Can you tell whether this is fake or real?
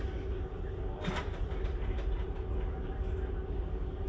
real